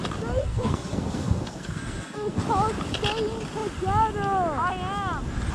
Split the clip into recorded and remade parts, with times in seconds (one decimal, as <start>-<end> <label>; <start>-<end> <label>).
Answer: 0.0-0.4 recorded; 0.4-2.4 remade; 2.4-5.5 recorded

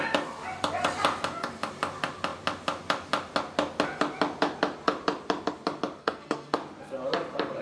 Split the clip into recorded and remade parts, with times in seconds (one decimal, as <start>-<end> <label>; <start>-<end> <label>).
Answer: 0.0-6.0 recorded; 6.0-6.6 remade; 6.6-7.6 recorded

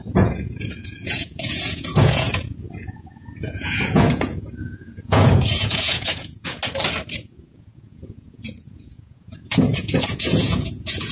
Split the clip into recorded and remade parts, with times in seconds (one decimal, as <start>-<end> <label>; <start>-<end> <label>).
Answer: 0.0-6.6 remade; 6.6-7.2 recorded; 7.2-11.1 remade